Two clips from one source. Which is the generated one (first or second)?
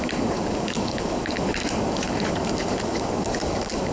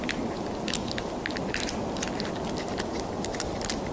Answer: first